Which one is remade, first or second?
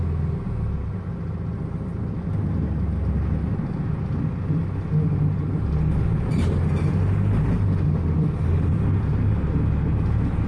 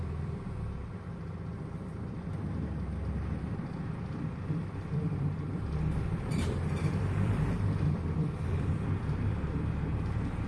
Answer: second